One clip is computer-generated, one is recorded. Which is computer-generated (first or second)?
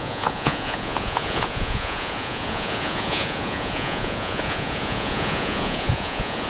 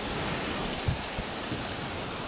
first